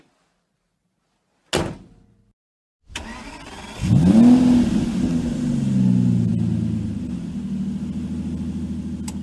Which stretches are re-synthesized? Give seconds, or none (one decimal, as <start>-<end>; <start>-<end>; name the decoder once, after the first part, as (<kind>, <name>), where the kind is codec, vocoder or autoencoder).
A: none